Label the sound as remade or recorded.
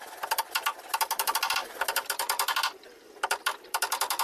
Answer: recorded